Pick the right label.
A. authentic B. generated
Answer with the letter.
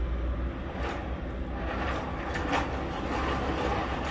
A